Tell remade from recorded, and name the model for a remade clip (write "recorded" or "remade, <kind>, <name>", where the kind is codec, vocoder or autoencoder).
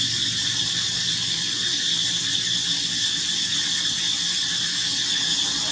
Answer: recorded